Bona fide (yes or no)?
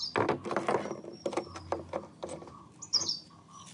yes